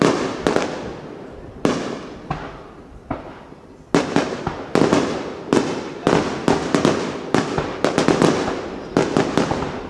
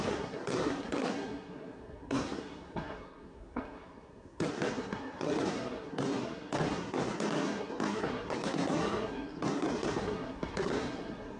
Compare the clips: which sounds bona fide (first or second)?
first